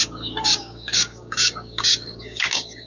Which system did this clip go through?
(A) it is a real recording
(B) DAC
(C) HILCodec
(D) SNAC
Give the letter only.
B